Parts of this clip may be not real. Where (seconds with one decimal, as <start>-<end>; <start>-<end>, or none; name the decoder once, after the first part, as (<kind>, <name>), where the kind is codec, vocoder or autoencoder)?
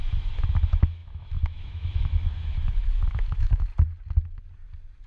0.0-3.7 (autoencoder, DAC-VAE)